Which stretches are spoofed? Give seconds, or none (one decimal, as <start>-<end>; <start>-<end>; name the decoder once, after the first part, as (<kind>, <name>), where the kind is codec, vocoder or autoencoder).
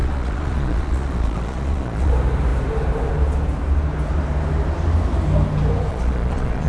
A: 0.0-2.1 (vocoder, Vocos); 5.9-6.7